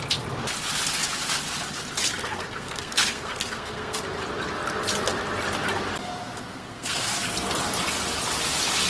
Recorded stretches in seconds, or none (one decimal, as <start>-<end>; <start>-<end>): 0.0-2.2; 4.0-6.5; 7.2-8.9